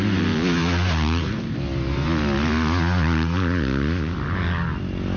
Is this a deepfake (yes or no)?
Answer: no